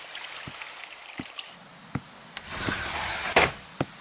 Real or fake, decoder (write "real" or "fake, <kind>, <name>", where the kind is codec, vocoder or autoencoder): real